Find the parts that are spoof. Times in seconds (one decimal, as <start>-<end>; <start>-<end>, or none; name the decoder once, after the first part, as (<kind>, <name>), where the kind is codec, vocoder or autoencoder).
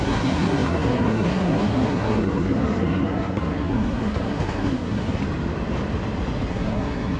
0.0-5.2 (codec, SNAC); 6.5-7.2